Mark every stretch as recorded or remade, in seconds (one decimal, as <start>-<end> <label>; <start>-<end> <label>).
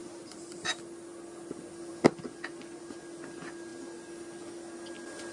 0.0-0.6 remade; 0.6-5.3 recorded